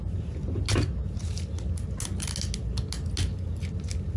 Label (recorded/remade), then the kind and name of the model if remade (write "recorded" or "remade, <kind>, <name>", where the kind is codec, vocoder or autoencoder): recorded